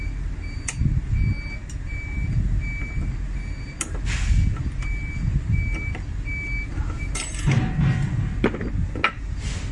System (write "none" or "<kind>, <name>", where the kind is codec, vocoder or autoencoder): none